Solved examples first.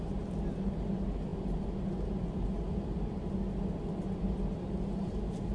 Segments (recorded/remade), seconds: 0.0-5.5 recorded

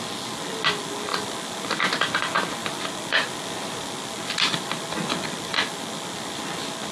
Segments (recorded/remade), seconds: 0.0-6.9 recorded